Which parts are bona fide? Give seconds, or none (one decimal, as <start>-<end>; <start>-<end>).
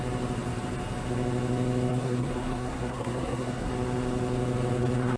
0.0-1.9; 3.7-5.2